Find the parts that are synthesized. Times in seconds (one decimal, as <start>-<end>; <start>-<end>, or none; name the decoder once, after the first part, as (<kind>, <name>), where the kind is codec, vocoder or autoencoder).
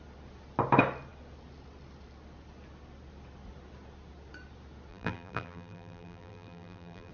4.9-7.1 (vocoder, BigVGAN v2)